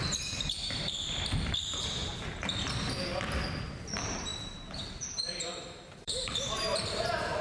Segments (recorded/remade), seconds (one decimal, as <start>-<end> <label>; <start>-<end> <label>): 0.0-2.0 remade; 2.0-3.6 recorded; 3.6-7.4 remade